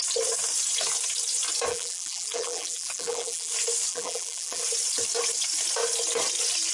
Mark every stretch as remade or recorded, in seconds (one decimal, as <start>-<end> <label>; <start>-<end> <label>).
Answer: 0.0-1.7 recorded; 1.7-3.5 remade; 3.5-3.9 recorded; 3.9-4.6 remade; 4.6-6.7 recorded